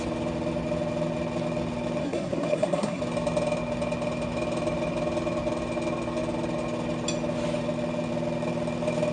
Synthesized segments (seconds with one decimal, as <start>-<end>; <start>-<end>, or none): 2.0-3.0